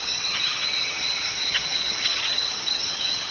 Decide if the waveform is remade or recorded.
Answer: remade